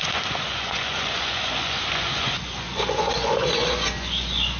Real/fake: fake